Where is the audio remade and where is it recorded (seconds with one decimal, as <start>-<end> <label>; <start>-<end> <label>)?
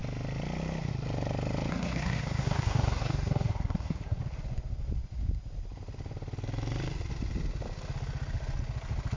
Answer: 0.0-1.7 recorded; 1.7-4.2 remade; 4.2-9.2 recorded